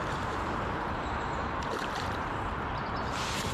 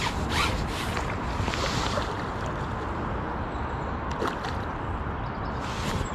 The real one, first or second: second